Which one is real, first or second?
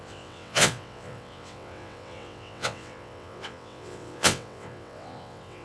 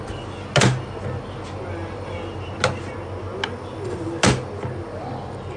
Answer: second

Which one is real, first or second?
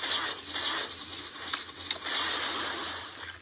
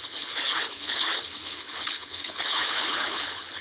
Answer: first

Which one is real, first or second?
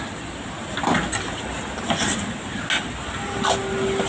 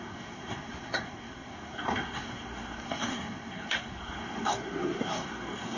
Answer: first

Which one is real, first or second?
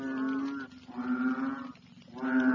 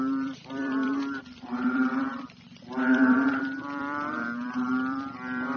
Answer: first